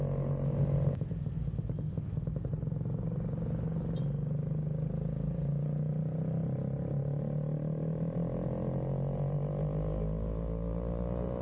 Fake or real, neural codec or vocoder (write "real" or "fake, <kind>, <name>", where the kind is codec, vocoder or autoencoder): real